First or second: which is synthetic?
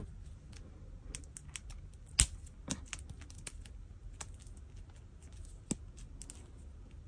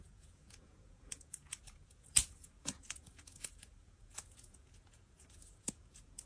second